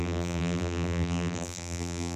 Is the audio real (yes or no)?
no